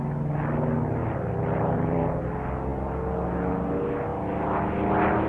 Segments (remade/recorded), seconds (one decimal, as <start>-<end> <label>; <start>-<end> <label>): 0.0-1.0 recorded; 1.0-2.2 remade; 2.2-5.3 recorded